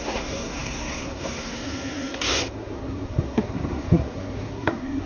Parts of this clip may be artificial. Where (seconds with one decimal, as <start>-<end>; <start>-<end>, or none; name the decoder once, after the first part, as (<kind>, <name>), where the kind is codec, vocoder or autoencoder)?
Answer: 0.0-5.1 (codec, SNAC)